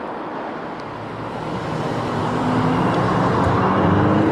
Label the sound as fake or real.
real